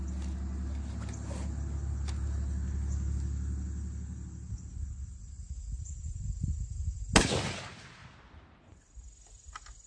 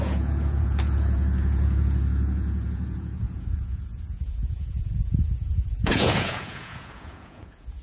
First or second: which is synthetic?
second